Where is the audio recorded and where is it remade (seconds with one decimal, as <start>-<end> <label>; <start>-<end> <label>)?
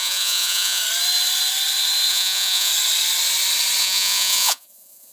0.0-0.8 remade; 0.8-2.1 recorded; 2.1-2.7 remade; 2.7-3.8 recorded; 3.8-5.1 remade